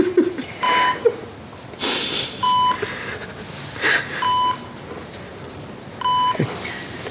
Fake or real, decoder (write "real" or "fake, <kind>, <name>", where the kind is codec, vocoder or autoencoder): real